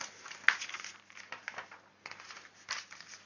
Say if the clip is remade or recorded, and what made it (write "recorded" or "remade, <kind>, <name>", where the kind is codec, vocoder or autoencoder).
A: recorded